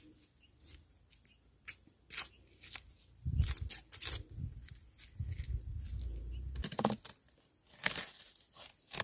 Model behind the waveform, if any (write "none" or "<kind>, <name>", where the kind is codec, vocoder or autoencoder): none